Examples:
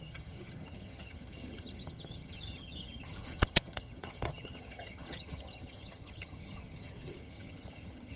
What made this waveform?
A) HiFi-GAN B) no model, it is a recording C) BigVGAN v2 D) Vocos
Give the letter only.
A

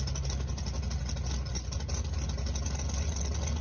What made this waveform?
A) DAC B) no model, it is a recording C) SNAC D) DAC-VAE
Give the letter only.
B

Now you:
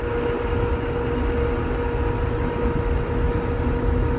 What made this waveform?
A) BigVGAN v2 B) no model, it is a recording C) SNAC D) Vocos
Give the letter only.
B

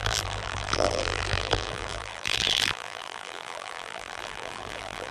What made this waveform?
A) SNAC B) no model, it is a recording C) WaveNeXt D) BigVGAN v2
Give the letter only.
D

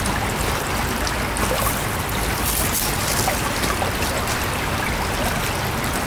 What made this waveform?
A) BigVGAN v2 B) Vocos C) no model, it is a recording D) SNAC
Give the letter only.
C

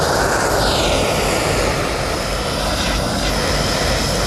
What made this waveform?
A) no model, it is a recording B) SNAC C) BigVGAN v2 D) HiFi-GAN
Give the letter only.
A